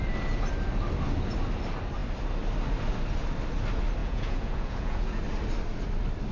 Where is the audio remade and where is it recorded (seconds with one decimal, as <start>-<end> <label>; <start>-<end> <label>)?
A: 0.0-4.0 recorded; 4.0-5.2 remade; 5.2-6.3 recorded